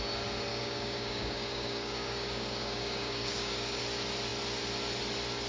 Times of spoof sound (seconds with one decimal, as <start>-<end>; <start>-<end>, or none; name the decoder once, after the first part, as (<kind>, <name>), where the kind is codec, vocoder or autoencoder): 0.5-3.8 (codec, DAC)